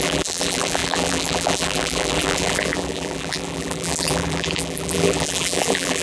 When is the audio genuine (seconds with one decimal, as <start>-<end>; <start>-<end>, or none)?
none